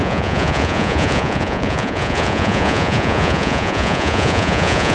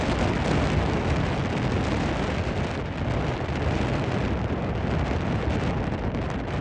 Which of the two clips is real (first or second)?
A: second